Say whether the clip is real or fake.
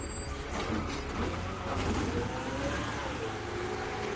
real